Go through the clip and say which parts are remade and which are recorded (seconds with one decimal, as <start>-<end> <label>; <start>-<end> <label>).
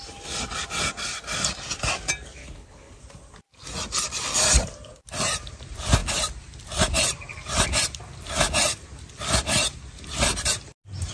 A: 0.0-2.4 recorded; 2.4-3.0 remade; 3.0-11.1 recorded